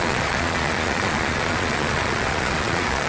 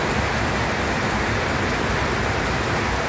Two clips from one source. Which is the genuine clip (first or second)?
second